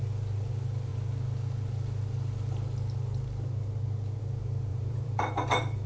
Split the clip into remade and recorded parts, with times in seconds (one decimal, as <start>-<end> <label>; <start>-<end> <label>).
0.0-4.7 recorded; 4.7-5.9 remade